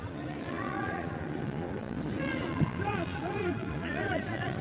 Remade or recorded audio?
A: remade